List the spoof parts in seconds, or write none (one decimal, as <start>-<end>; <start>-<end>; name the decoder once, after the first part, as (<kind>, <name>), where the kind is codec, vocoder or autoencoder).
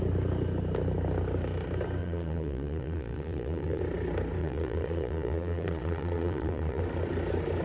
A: 2.0-3.8 (vocoder, Vocos); 4.4-6.8